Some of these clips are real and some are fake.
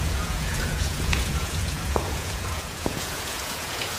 fake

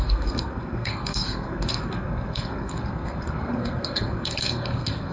fake